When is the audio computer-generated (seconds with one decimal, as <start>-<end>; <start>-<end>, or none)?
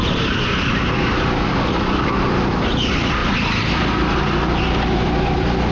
none